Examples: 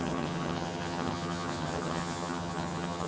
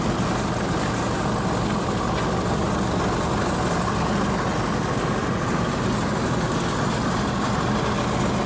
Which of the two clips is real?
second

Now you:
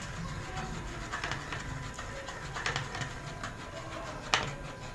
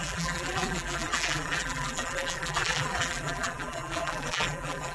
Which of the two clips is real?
first